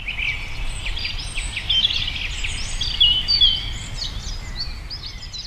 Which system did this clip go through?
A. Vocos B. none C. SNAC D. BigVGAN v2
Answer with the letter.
B